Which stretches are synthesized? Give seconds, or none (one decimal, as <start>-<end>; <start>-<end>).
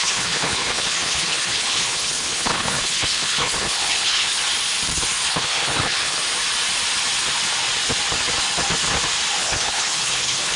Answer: 0.0-4.4; 5.3-6.2; 9.4-10.6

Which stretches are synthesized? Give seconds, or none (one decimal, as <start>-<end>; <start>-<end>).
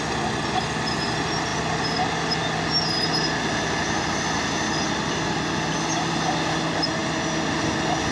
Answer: none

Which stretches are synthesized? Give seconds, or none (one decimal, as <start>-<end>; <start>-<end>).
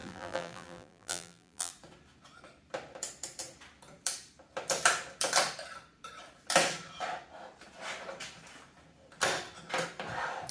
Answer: 0.0-1.7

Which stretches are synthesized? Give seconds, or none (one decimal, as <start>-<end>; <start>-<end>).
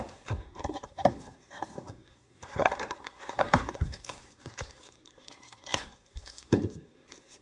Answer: 0.0-7.4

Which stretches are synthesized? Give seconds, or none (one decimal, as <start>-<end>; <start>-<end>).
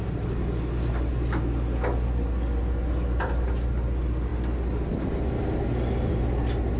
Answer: none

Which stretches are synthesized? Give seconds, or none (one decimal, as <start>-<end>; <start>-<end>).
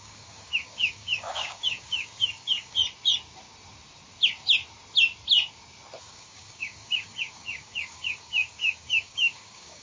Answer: 0.0-2.8; 6.0-9.8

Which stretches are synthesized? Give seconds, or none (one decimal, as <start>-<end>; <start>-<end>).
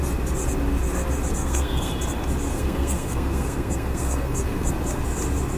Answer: 1.3-1.9; 2.5-4.7